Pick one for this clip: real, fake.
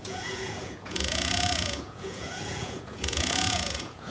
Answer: fake